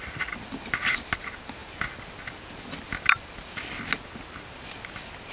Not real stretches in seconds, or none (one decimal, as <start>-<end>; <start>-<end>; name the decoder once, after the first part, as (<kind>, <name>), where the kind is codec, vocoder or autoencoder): none